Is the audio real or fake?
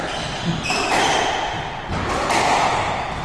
real